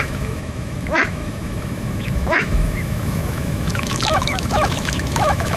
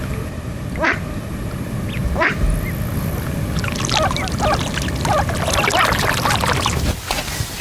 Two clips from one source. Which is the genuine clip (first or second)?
second